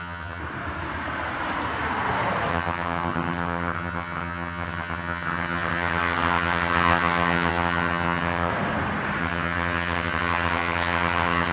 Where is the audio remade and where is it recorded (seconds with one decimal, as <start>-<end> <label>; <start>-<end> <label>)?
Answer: 0.0-0.4 remade; 0.4-2.5 recorded; 2.5-8.5 remade; 8.5-9.2 recorded; 9.2-11.5 remade